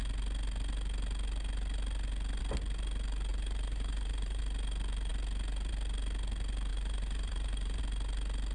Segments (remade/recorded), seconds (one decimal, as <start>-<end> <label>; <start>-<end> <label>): 0.0-3.3 recorded; 3.3-4.4 remade; 4.4-6.7 recorded; 6.7-7.8 remade; 7.8-8.5 recorded